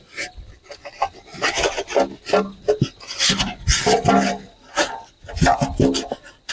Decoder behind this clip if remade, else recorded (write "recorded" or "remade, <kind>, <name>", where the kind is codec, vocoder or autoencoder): recorded